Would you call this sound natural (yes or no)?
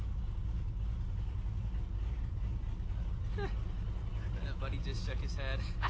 yes